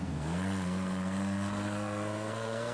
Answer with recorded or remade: remade